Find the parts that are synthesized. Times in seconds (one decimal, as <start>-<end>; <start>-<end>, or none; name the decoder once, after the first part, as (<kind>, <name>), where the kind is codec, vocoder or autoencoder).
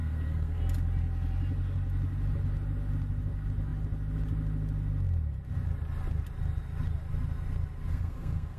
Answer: 0.0-0.6 (codec, SNAC); 7.9-8.6